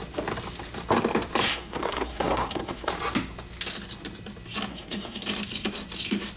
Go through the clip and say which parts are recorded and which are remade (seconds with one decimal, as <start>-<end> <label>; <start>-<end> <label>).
0.0-1.5 recorded; 1.5-2.9 remade; 2.9-4.7 recorded; 4.7-5.2 remade; 5.2-6.4 recorded